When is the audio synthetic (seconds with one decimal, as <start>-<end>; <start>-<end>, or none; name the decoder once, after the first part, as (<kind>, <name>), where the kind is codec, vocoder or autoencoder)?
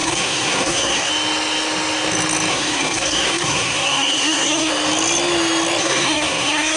0.0-1.1 (codec, SNAC); 2.5-4.7; 5.8-6.8